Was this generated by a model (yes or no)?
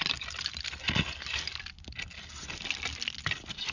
no